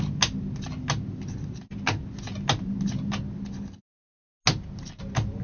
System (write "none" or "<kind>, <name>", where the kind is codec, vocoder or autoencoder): none